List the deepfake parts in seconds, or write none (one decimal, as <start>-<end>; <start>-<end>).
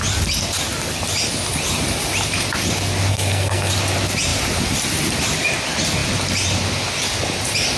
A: 3.1-3.7